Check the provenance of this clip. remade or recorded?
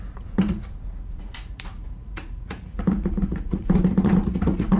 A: remade